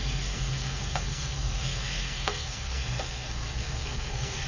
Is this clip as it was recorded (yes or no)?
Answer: no